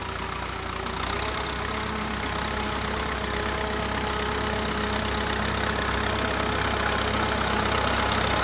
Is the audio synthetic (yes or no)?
no